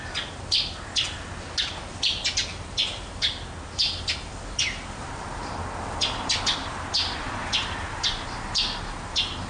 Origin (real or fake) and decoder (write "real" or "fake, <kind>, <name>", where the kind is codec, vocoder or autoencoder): real